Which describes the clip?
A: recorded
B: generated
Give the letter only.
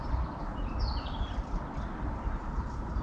A